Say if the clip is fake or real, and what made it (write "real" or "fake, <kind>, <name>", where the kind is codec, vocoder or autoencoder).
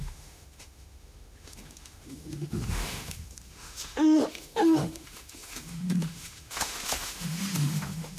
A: fake, autoencoder, DAC-VAE